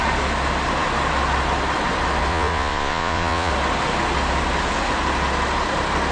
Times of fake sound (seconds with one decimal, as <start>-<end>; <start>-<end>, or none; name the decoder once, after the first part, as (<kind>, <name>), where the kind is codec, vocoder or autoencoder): 2.3-3.5 (vocoder, Vocos)